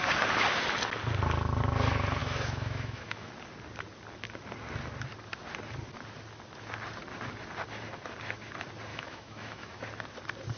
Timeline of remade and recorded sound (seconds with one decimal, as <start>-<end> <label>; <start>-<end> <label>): 0.0-2.2 recorded; 2.2-3.3 remade; 3.3-8.9 recorded; 8.9-9.8 remade; 9.8-10.6 recorded

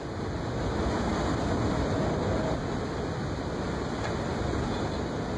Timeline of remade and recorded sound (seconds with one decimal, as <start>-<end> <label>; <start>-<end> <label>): 0.0-5.4 recorded

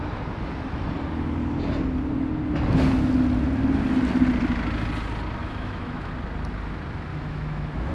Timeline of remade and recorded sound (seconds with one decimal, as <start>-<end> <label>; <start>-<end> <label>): 0.0-5.4 recorded; 5.4-6.1 remade; 6.1-7.1 recorded; 7.1-7.9 remade

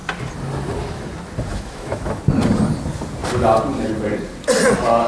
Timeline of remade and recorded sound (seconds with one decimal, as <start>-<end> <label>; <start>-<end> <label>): 0.0-1.5 recorded; 1.5-2.2 remade; 2.2-5.1 recorded